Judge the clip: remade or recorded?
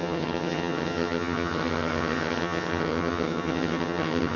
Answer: remade